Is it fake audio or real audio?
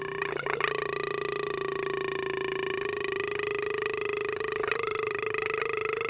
real